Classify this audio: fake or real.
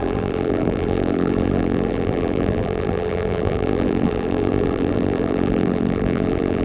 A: fake